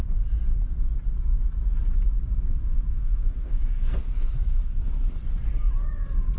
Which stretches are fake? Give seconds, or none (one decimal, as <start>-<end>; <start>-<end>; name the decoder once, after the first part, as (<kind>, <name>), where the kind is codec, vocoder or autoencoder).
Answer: 2.5-4.8 (codec, SNAC)